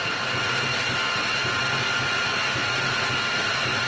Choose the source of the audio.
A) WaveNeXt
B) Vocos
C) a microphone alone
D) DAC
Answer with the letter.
C